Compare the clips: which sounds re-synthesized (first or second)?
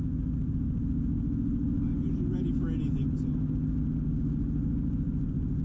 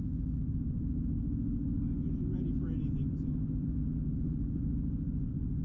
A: second